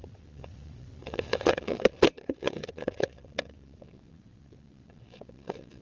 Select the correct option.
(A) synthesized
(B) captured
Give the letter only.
A